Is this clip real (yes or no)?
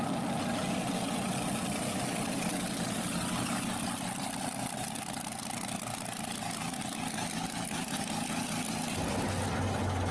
yes